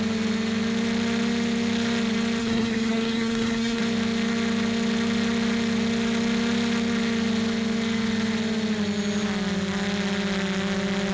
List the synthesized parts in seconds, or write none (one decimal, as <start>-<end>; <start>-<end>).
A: 2.4-3.8